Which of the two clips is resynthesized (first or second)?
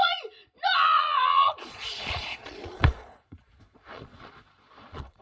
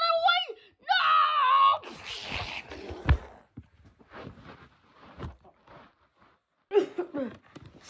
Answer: first